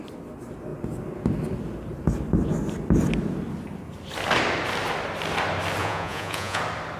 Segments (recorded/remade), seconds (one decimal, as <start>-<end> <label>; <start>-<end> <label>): 0.0-5.8 recorded; 5.8-6.6 remade; 6.6-7.0 recorded